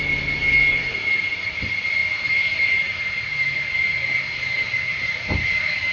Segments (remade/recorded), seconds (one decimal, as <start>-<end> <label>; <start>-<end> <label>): 0.0-2.0 recorded; 2.0-4.0 remade; 4.0-4.9 recorded; 4.9-5.9 remade